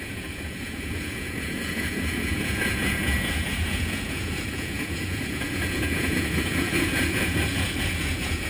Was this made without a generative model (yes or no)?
no